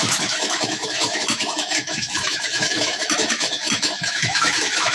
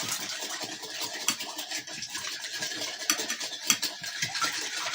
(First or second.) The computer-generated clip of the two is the first